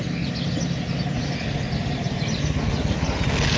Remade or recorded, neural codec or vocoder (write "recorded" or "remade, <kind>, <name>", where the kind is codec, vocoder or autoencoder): recorded